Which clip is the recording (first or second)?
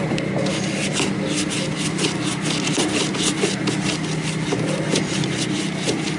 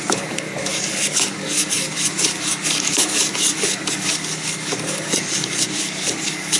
first